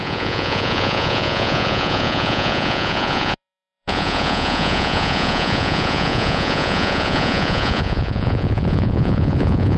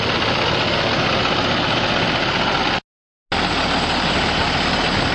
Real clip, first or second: second